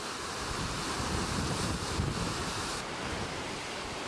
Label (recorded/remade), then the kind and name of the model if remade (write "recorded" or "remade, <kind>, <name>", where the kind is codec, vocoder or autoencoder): remade, vocoder, BigVGAN v2